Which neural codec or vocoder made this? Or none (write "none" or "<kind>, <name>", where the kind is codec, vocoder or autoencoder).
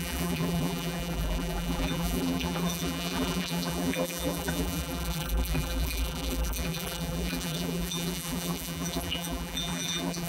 vocoder, BigVGAN v2